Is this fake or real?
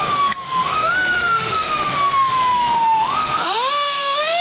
fake